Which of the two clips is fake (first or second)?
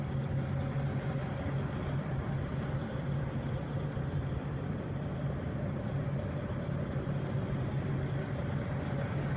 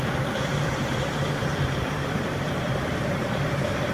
second